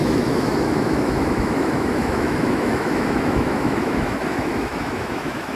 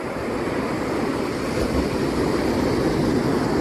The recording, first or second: second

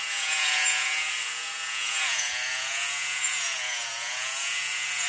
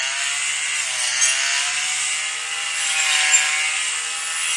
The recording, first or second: second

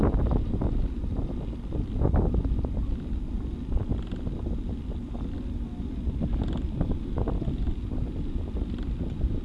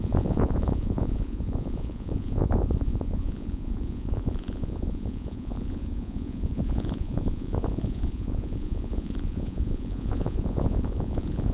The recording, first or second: first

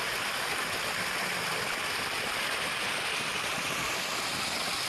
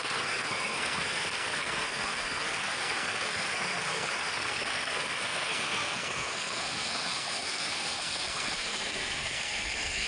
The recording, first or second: first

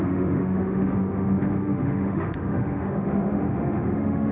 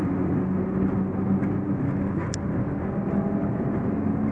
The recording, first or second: second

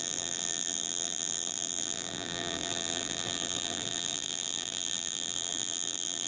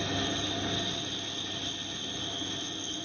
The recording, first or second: second